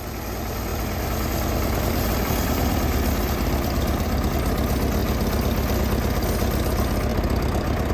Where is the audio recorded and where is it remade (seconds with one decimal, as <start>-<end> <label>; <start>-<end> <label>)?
0.0-0.7 recorded; 0.7-4.3 remade; 4.3-7.1 recorded; 7.1-7.9 remade